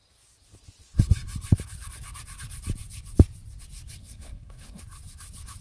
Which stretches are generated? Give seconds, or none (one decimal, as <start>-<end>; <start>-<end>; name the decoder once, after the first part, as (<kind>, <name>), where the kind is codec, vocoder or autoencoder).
4.0-4.8 (codec, SNAC)